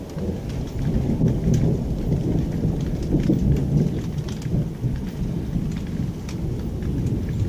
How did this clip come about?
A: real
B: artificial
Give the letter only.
A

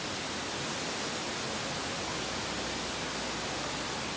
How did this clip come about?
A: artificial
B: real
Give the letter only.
B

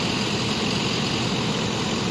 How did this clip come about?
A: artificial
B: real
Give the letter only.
B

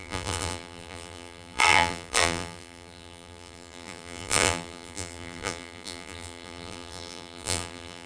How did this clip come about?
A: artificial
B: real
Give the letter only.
A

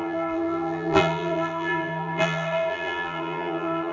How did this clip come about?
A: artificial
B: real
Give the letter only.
A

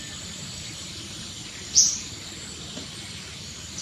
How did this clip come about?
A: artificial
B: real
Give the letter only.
A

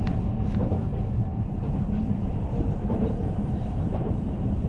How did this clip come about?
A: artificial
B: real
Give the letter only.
A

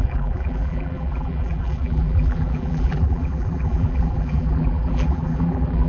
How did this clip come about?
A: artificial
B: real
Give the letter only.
A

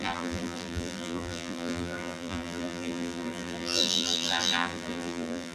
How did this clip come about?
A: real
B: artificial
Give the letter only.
B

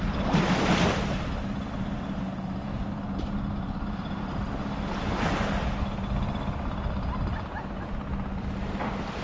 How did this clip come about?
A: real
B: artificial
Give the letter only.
A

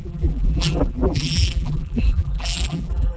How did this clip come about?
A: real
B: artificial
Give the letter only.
B